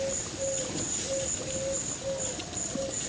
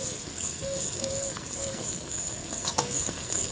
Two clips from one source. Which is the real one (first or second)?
first